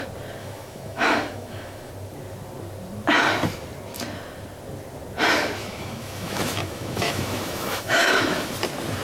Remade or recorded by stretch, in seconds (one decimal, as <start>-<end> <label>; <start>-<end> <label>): 0.0-0.4 recorded; 0.4-1.9 remade; 1.9-5.6 recorded; 5.6-8.5 remade; 8.5-9.0 recorded